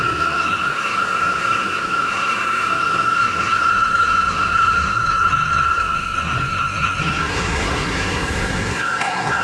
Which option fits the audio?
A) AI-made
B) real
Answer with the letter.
A